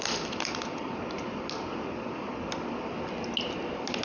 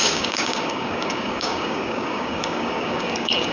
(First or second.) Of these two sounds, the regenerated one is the second